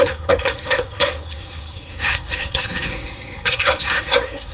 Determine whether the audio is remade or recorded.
remade